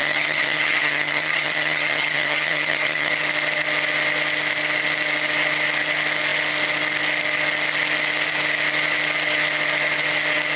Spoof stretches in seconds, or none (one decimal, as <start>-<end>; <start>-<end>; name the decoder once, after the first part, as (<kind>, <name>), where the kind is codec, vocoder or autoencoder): 0.0-3.1 (vocoder, HiFi-GAN)